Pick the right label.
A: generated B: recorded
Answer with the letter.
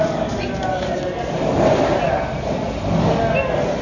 B